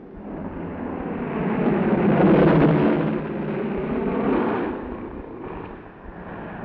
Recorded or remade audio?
recorded